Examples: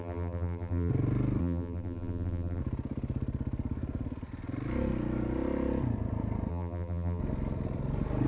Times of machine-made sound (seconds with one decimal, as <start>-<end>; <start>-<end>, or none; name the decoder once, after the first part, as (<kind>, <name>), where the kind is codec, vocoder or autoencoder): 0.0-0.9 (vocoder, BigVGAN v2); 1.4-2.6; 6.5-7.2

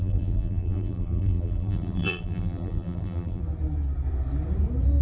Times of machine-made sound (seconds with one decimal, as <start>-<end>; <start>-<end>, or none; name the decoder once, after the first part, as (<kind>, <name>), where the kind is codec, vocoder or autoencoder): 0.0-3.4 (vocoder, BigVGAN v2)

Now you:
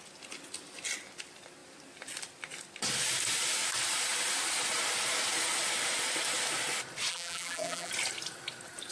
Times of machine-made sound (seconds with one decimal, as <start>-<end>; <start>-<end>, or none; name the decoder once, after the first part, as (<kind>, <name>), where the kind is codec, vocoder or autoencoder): 7.1-7.9 (vocoder, BigVGAN v2)

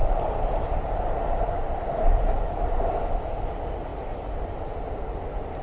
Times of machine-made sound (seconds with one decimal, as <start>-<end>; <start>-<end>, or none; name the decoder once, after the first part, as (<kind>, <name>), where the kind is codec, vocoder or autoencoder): 0.0-3.0 (vocoder, BigVGAN v2)

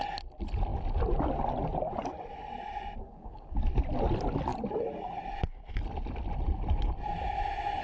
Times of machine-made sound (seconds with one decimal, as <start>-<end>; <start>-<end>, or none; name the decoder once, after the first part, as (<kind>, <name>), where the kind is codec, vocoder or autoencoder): 4.5-7.2 (vocoder, BigVGAN v2)